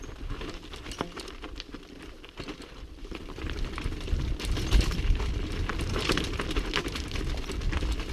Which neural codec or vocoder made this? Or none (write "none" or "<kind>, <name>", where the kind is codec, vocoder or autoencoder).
none